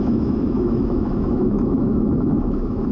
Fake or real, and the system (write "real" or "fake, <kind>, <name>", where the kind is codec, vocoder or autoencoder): fake, autoencoder, DAC-VAE